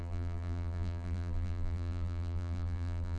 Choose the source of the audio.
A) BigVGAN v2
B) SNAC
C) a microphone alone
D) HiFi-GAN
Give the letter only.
A